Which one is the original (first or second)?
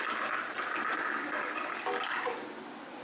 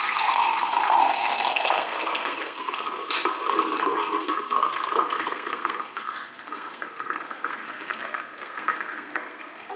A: first